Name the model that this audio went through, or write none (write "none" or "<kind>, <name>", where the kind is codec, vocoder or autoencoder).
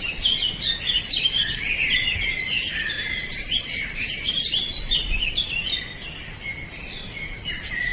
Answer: none